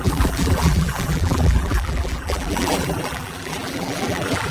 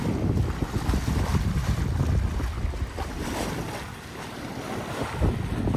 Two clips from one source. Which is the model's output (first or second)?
first